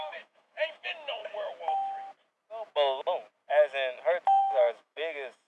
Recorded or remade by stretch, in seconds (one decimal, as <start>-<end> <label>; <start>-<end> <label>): 0.0-1.2 remade; 1.2-4.4 recorded; 4.4-5.5 remade